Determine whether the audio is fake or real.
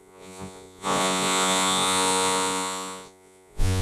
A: fake